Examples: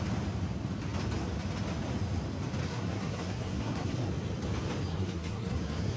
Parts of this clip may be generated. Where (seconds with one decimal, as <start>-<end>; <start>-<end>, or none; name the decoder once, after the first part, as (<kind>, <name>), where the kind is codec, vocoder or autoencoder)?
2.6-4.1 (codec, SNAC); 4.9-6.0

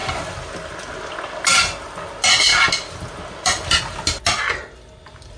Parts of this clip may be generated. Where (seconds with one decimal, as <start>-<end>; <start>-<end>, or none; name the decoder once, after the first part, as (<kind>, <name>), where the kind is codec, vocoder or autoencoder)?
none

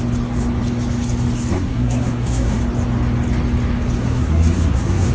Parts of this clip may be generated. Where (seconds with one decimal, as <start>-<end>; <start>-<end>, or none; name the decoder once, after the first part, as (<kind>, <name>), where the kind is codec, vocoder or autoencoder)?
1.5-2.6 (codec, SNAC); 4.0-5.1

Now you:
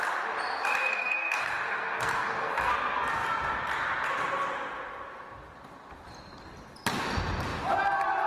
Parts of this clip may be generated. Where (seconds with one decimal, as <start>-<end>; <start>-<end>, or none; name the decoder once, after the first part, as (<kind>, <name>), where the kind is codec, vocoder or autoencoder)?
0.9-2.7 (codec, SNAC)

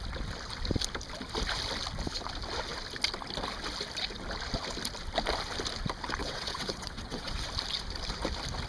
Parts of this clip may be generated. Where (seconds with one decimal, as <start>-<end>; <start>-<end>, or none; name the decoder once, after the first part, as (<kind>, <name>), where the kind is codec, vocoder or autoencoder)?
6.2-7.3 (vocoder, WaveNeXt)

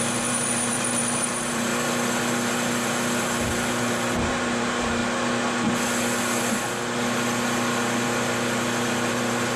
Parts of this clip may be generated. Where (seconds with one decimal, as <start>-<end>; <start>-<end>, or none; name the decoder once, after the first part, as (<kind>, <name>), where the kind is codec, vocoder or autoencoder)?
0.0-1.7 (vocoder, BigVGAN v2); 3.2-5.0; 9.1-9.6